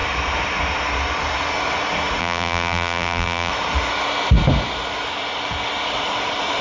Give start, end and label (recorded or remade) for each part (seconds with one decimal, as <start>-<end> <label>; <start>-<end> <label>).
0.0-2.2 recorded; 2.2-3.5 remade; 3.5-6.6 recorded